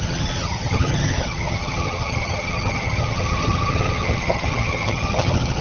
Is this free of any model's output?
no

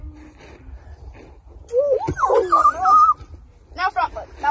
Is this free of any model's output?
yes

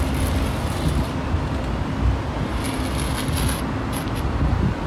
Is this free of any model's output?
yes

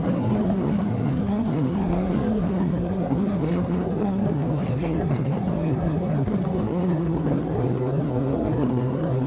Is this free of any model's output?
no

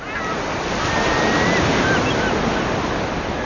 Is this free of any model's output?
yes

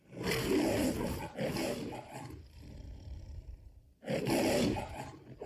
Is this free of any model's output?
no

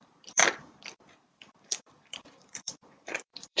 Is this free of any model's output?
no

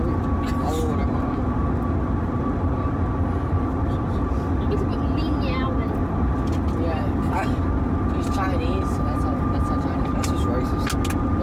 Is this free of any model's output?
yes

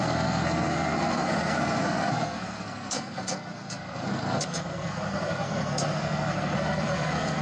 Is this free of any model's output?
no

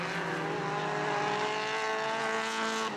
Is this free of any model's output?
yes